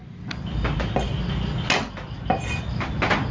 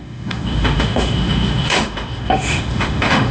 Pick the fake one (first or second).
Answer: second